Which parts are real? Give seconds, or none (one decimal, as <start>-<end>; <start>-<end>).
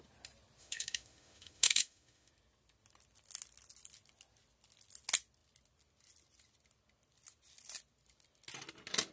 0.0-0.6; 2.3-9.1